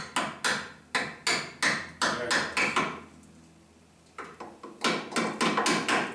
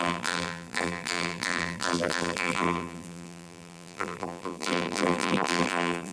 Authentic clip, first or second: first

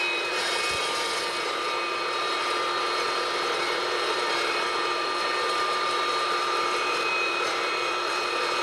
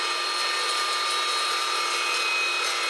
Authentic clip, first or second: second